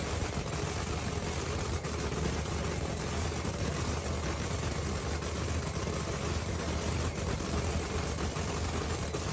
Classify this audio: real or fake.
real